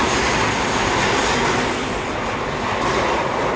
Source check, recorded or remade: recorded